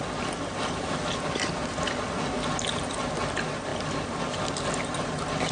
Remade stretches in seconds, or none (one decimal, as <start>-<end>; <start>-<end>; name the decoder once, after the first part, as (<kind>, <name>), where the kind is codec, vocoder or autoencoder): none